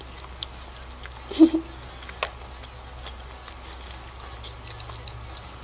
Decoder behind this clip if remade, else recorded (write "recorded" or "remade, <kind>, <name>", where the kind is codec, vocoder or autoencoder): recorded